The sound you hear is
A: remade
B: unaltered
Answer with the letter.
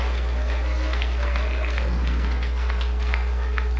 A